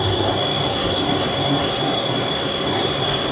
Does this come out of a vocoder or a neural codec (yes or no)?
yes